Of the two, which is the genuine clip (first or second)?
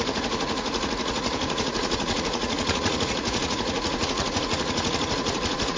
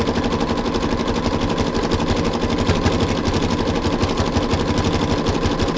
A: second